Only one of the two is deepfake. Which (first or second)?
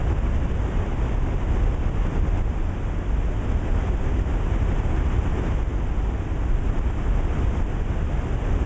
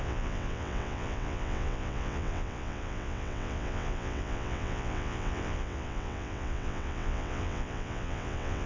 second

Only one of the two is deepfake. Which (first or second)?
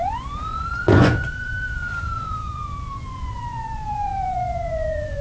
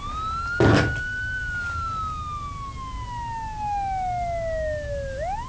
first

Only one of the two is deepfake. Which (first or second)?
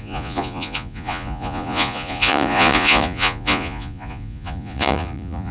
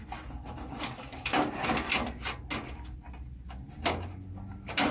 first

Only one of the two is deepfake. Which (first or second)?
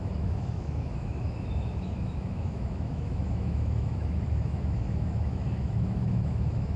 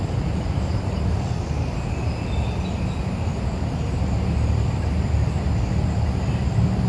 first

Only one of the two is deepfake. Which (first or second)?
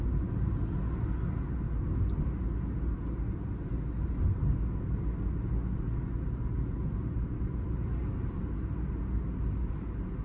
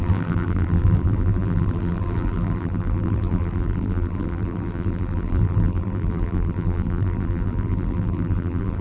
second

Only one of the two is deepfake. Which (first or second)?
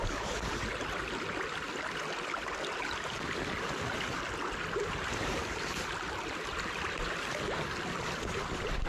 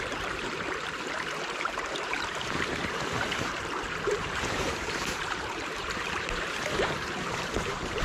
second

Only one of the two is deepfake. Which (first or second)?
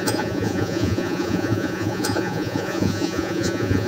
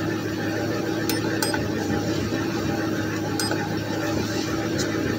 first